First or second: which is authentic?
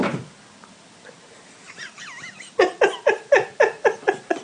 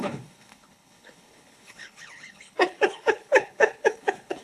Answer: first